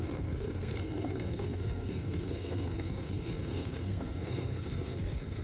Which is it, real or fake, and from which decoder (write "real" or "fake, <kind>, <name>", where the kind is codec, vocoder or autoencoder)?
fake, codec, SNAC